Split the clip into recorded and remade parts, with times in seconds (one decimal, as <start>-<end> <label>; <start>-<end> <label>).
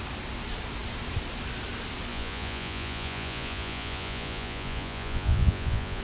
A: 0.0-2.1 recorded; 2.1-6.0 remade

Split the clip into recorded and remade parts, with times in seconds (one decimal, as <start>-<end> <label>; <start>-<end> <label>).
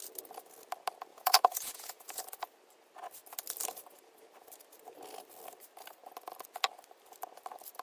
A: 0.0-1.1 recorded; 1.1-2.2 remade; 2.2-7.8 recorded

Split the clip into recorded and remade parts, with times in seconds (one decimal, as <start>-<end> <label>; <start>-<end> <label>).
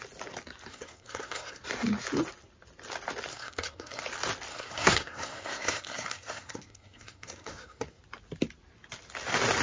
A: 0.0-0.7 recorded; 0.7-1.6 remade; 1.6-3.3 recorded; 3.3-4.0 remade; 4.0-4.5 recorded; 4.5-8.0 remade; 8.0-9.6 recorded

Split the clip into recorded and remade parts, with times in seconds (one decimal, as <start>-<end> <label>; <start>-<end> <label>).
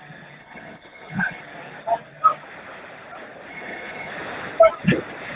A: 0.0-0.4 recorded; 0.4-1.4 remade; 1.4-3.5 recorded; 3.5-4.1 remade; 4.1-5.4 recorded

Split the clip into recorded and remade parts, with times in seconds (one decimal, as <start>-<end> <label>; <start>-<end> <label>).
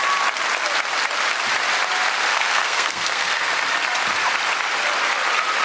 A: 0.0-2.3 recorded; 2.3-3.5 remade; 3.5-5.6 recorded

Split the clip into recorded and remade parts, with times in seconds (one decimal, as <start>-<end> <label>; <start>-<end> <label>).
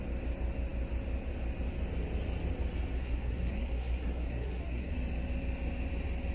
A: 0.0-3.0 recorded; 3.0-4.9 remade; 4.9-6.3 recorded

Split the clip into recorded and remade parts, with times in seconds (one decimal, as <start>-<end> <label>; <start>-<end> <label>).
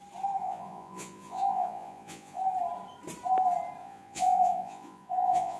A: 0.0-0.4 recorded; 0.4-2.4 remade; 2.4-3.8 recorded; 3.8-5.6 remade